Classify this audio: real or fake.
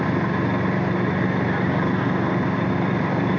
real